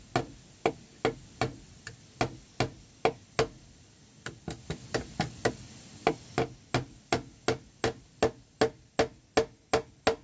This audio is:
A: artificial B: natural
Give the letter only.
B